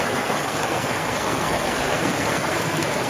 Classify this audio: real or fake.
fake